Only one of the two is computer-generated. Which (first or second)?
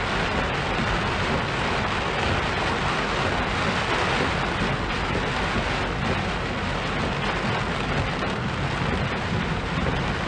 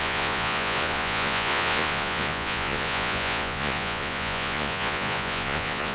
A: second